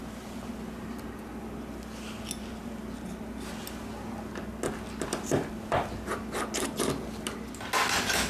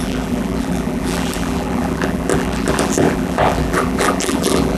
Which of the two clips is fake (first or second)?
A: second